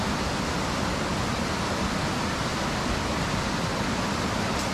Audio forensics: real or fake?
real